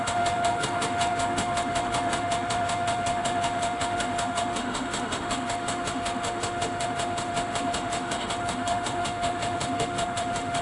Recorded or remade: remade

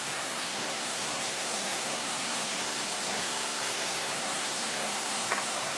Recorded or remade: remade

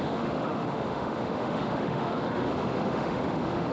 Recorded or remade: remade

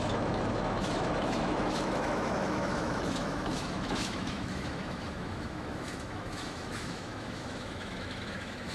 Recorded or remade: remade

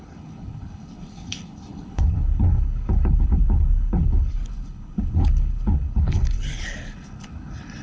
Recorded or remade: remade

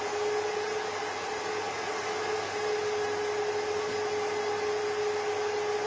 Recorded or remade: recorded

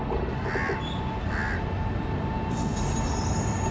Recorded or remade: recorded